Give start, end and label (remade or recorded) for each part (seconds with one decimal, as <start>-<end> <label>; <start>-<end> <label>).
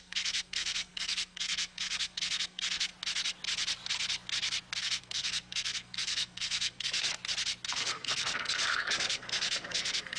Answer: 0.0-2.9 remade; 2.9-4.8 recorded; 4.8-7.1 remade; 7.1-7.7 recorded; 7.7-10.2 remade